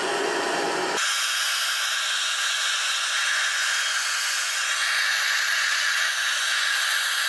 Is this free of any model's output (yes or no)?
no